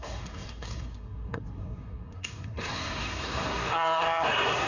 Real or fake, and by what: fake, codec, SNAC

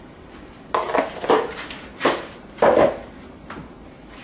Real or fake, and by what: real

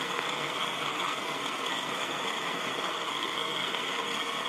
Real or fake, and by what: fake, codec, SNAC